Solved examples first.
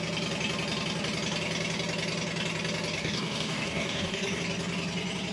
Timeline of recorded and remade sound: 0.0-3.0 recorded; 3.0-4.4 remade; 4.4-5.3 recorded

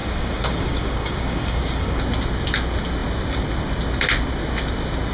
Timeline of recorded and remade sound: 0.0-2.0 remade; 2.0-5.1 recorded

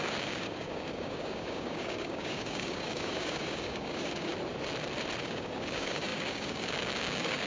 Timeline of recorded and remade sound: 0.0-4.3 remade; 4.3-5.2 recorded; 5.2-7.5 remade

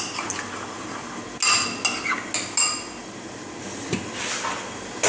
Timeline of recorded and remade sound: 0.0-5.1 recorded

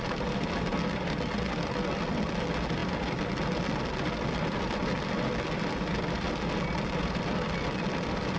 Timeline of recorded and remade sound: 0.0-8.4 recorded

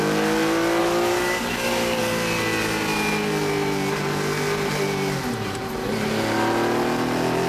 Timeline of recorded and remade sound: 0.0-0.8 recorded; 0.8-2.0 remade; 2.0-7.5 recorded